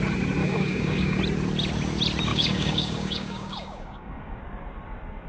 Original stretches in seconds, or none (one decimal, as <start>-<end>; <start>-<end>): 0.0-0.4; 1.2-2.3; 4.4-5.3